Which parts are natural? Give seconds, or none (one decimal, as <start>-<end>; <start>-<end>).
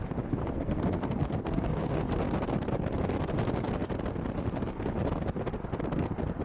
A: 0.0-0.4; 2.2-6.4